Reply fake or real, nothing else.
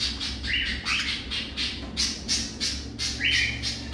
real